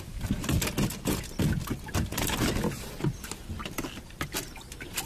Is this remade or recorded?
recorded